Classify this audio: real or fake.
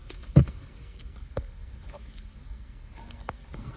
fake